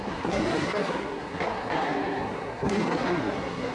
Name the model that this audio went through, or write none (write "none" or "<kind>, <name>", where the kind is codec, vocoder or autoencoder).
codec, SNAC